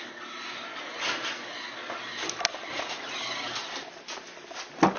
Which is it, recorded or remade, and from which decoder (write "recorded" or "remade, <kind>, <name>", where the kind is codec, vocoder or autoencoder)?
recorded